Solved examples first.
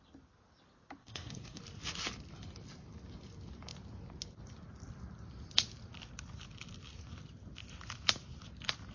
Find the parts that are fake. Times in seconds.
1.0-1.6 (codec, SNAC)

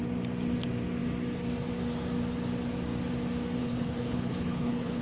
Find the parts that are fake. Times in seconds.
3.6-5.0 (codec, HILCodec)

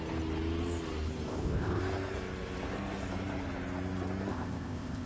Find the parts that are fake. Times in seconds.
1.3-1.8 (codec, ZipCodec); 4.3-5.1

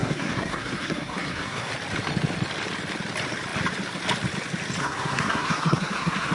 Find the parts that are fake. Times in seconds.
0.0-1.7 (codec, SNAC); 4.8-6.3

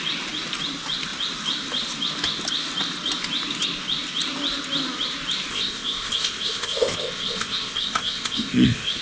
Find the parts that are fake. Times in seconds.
5.5-9.0 (codec, ZipCodec)

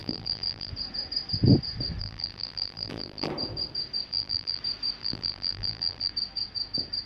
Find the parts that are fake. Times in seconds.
0.0-0.7 (vocoder, BigVGAN v2); 2.0-3.3; 4.1-4.6; 5.0-6.1

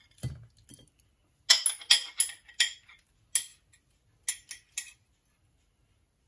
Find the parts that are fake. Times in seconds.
none